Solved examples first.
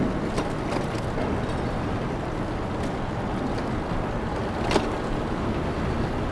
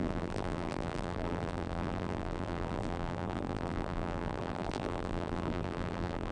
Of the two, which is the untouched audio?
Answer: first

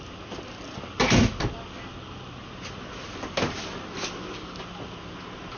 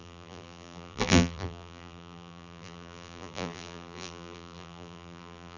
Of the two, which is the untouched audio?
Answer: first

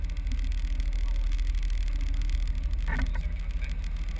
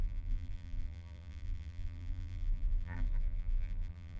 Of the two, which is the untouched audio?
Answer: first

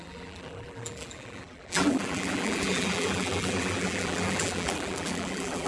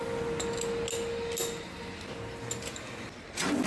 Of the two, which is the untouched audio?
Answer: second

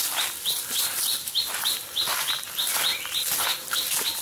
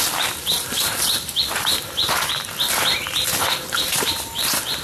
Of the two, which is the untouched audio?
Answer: first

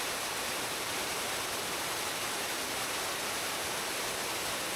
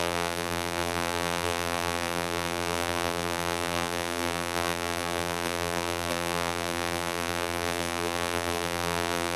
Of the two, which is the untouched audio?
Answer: first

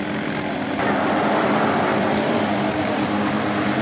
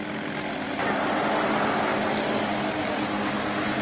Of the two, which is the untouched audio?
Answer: second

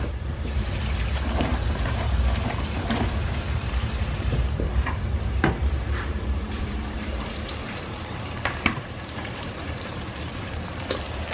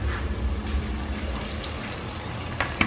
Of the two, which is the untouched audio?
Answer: second